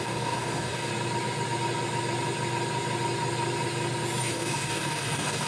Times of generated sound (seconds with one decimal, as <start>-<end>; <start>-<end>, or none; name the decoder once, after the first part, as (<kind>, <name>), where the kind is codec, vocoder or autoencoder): 0.0-0.9 (codec, DAC); 4.2-5.5